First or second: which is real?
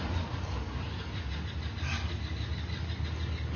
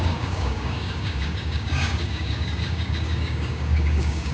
first